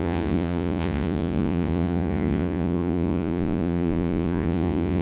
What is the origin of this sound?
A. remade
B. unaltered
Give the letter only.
A